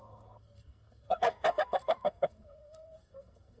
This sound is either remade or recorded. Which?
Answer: remade